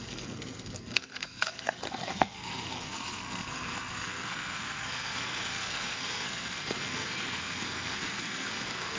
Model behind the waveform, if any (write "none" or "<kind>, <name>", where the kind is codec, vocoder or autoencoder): codec, SNAC